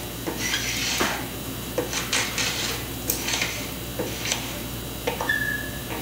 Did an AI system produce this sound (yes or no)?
no